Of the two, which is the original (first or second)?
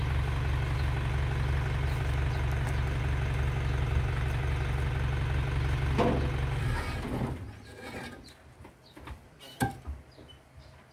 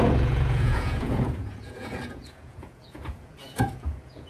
first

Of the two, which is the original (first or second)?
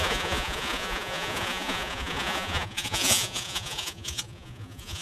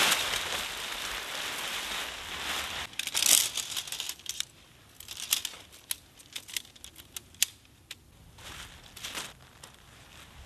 second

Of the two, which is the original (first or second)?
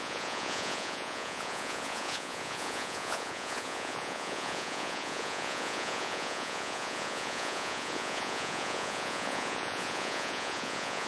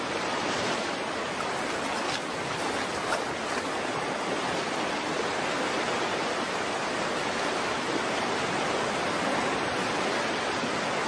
second